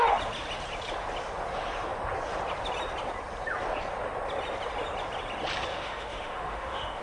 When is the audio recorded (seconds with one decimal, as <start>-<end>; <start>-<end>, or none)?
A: 0.0-5.7